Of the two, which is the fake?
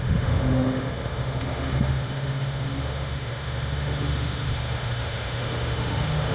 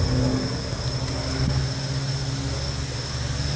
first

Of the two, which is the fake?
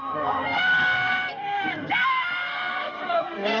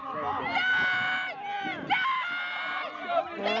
first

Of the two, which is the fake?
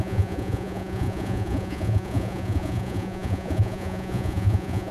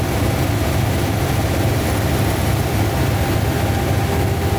first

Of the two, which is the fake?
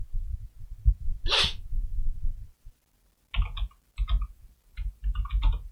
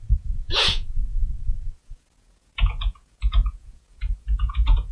second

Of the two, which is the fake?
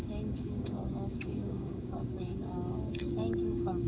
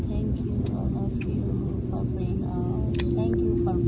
first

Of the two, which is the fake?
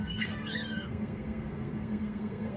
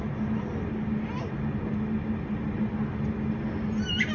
first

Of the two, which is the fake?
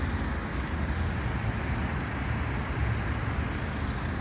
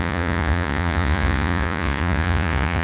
second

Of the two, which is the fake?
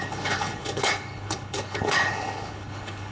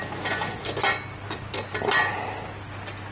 first